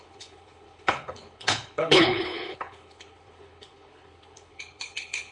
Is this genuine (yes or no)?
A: no